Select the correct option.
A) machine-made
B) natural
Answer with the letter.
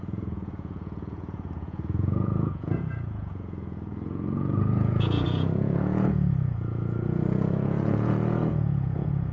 A